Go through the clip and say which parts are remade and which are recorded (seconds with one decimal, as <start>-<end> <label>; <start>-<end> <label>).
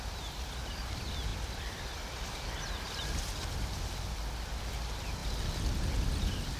0.0-1.3 recorded; 1.3-3.2 remade; 3.2-6.6 recorded